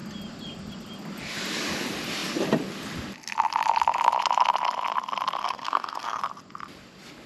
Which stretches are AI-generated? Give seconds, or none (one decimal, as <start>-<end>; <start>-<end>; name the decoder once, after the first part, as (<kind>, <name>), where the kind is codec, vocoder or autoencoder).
5.4-6.2 (codec, SNAC)